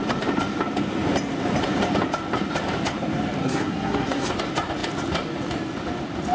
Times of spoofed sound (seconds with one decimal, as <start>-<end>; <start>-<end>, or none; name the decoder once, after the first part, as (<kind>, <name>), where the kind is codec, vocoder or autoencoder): 3.4-4.3 (codec, SNAC)